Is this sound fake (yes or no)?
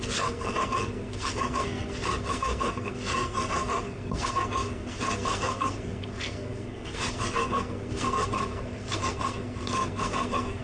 yes